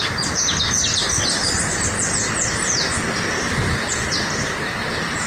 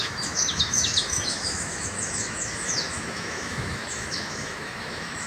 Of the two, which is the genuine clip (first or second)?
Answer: first